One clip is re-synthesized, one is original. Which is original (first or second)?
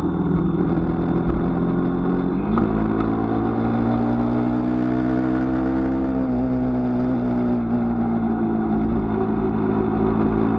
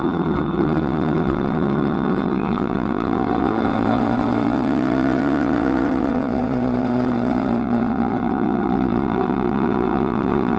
first